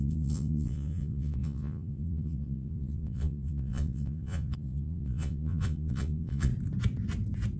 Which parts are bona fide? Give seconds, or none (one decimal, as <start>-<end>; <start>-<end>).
6.5-7.6